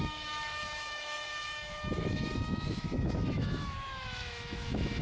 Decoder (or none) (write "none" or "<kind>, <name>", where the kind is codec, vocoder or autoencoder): autoencoder, DAC-VAE